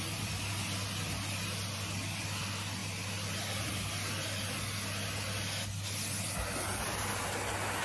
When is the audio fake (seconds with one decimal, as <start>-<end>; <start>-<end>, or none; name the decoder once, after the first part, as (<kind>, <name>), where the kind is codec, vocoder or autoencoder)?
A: none